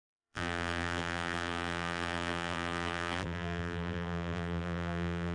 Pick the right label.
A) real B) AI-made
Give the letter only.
B